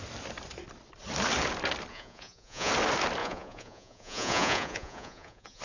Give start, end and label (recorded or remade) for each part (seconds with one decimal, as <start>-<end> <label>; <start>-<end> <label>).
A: 0.0-1.9 recorded; 1.9-2.7 remade; 2.7-3.2 recorded; 3.2-5.6 remade